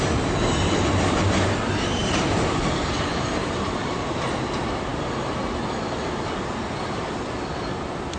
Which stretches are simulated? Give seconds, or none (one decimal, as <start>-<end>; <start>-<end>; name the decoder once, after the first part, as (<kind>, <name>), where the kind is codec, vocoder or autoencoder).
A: 2.0-2.6 (vocoder, BigVGAN v2); 3.1-4.3